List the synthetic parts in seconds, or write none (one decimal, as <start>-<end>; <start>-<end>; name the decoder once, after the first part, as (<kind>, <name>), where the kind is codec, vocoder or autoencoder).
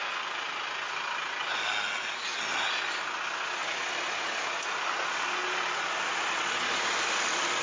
none